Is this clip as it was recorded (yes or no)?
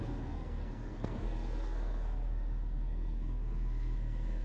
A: no